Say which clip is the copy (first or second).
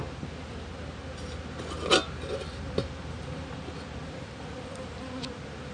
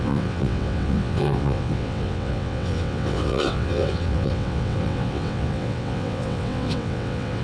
second